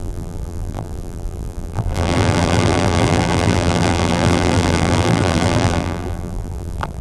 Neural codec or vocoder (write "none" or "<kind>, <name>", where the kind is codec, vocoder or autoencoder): vocoder, BigVGAN v2